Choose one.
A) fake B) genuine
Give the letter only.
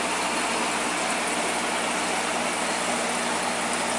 B